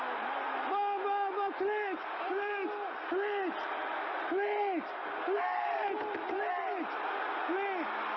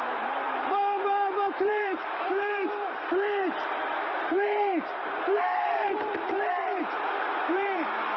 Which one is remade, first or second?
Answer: second